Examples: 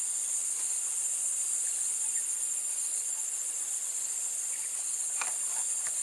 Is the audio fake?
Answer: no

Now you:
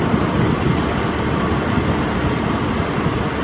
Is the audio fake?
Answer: no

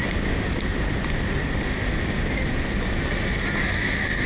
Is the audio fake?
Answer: no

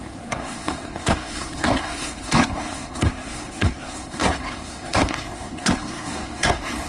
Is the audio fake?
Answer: yes